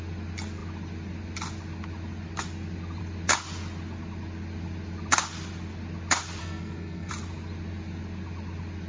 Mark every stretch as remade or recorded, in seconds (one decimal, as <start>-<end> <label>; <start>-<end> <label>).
0.0-6.4 recorded; 6.4-7.1 remade; 7.1-8.9 recorded